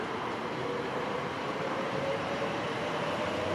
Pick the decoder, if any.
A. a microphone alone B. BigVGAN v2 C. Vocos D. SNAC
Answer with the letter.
B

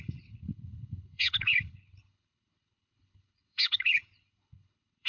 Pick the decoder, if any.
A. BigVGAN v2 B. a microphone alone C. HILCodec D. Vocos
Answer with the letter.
C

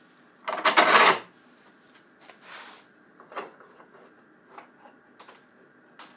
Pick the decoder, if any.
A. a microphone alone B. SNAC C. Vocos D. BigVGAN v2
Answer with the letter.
A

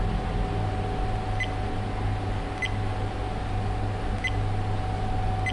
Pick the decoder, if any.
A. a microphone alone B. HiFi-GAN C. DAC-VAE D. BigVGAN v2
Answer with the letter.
A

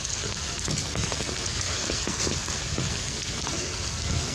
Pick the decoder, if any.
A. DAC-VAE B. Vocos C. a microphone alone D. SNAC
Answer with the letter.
D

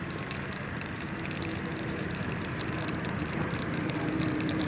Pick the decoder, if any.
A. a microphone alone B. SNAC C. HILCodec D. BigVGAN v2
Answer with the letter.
D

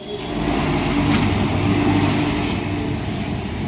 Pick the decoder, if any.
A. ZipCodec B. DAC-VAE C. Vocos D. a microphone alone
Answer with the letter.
D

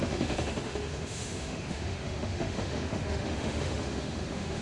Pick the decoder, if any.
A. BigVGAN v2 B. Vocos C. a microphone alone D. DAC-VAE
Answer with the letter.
D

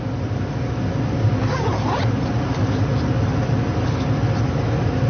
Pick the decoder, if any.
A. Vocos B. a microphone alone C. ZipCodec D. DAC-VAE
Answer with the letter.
B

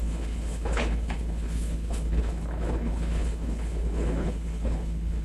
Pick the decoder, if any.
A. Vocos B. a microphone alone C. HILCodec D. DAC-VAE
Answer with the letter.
C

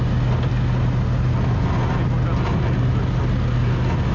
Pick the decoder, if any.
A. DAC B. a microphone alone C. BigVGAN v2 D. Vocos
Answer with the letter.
B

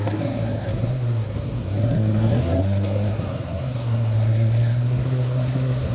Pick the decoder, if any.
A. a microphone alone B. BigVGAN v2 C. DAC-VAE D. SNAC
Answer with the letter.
D